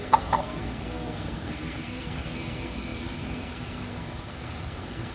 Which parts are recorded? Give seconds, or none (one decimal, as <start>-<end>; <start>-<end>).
none